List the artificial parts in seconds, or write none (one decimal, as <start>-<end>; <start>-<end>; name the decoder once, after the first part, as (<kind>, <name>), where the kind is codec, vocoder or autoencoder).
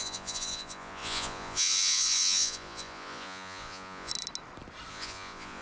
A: 0.0-4.1 (vocoder, Vocos); 4.9-5.6